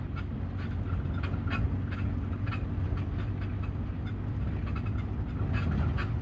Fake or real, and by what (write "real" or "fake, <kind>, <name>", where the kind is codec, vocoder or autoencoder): real